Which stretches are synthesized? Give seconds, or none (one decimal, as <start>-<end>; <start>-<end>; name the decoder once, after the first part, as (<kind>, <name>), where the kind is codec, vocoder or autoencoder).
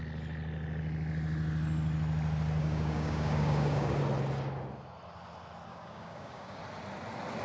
2.6-4.0 (codec, DAC); 5.7-6.6